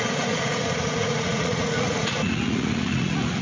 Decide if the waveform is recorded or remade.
remade